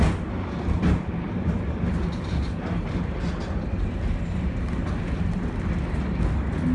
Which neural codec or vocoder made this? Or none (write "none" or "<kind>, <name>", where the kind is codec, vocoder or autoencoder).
none